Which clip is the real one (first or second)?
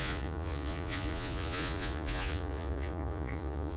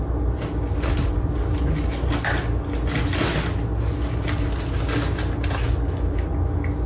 second